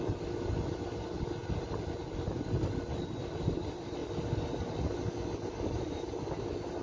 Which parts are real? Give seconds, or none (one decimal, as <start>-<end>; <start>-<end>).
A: 0.0-6.8